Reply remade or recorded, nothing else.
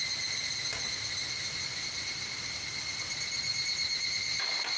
remade